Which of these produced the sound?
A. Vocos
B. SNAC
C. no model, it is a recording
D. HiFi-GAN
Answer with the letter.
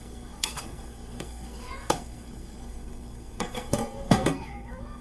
B